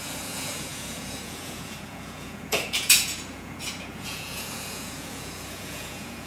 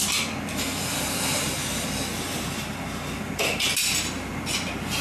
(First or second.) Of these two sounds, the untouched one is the second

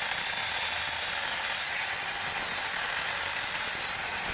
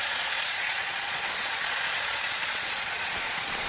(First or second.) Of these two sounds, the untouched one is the first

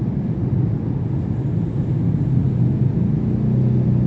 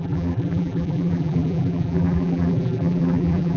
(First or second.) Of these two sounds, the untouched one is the first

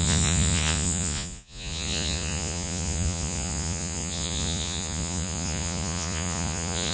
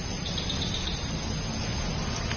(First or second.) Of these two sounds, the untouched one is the second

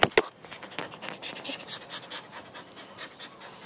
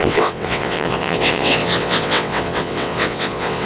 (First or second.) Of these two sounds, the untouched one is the first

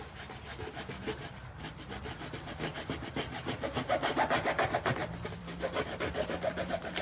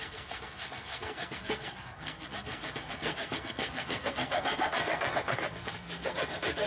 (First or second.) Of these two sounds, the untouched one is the first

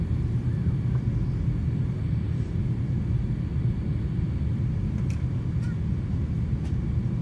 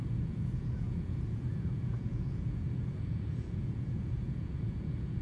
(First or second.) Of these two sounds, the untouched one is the first